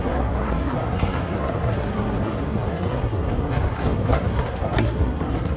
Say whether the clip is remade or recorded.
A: remade